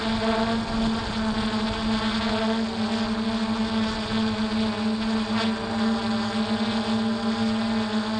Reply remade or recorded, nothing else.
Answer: recorded